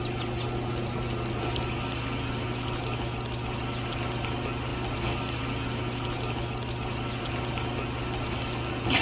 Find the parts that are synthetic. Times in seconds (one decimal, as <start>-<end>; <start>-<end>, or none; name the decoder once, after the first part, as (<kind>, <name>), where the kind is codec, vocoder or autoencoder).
none